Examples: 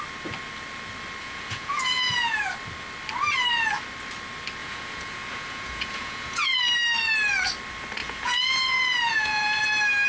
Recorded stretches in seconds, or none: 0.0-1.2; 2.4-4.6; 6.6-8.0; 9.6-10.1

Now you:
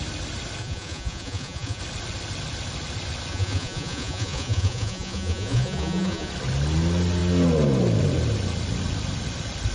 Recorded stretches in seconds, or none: 0.0-0.6; 1.8-3.3; 6.3-9.7